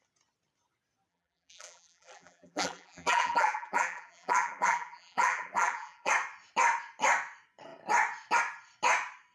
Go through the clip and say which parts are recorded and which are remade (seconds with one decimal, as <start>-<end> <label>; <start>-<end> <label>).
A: 0.0-1.1 recorded; 1.1-6.1 remade; 6.1-9.3 recorded

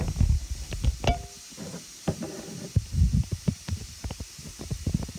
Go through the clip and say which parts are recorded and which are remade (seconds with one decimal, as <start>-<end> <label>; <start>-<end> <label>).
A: 0.0-5.2 recorded

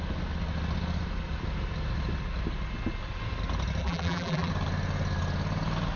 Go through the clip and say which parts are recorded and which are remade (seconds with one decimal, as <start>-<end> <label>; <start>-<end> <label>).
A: 0.0-3.8 recorded; 3.8-4.5 remade; 4.5-6.0 recorded

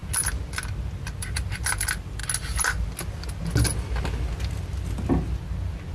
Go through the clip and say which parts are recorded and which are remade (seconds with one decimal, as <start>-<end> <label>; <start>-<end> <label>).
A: 0.0-1.2 recorded; 1.2-2.2 remade; 2.2-5.9 recorded